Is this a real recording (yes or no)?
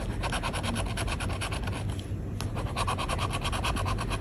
yes